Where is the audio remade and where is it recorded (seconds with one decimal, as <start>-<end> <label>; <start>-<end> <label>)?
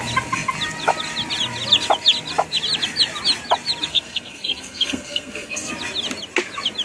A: 0.0-3.9 recorded; 3.9-5.7 remade; 5.7-6.8 recorded